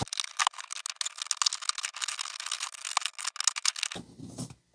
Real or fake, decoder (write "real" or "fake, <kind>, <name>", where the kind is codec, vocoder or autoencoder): real